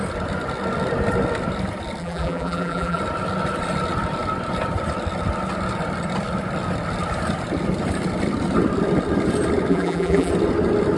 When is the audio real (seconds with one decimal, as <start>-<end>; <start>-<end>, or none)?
0.0-2.0; 3.0-9.7; 10.3-11.0